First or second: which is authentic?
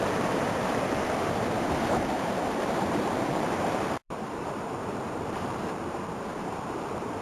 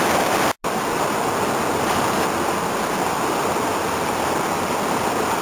second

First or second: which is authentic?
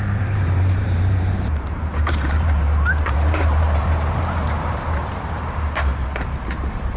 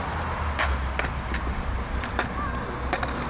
second